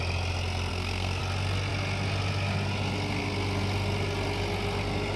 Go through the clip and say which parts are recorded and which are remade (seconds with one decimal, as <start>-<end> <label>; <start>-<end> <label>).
0.0-0.7 recorded; 0.7-1.2 remade; 1.2-5.2 recorded